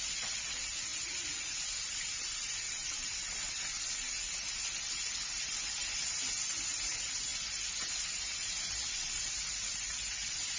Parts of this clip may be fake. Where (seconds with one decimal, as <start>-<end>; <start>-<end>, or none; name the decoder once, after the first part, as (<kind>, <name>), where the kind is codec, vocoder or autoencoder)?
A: none